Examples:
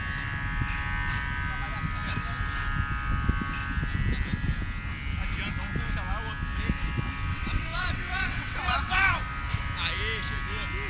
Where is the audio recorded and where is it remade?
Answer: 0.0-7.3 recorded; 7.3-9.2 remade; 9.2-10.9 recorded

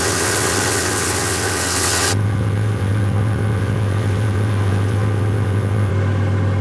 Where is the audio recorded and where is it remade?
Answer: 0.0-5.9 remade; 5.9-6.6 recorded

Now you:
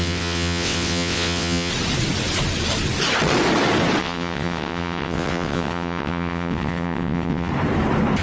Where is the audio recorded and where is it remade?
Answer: 0.0-1.7 remade; 1.7-4.0 recorded; 4.0-7.5 remade; 7.5-8.2 recorded